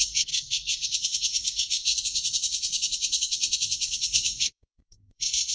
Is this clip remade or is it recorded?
remade